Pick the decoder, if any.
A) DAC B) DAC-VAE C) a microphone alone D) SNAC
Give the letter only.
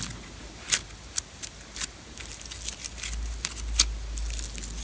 C